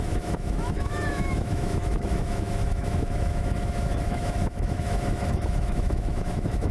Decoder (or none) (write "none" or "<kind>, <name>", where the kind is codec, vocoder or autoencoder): autoencoder, DAC-VAE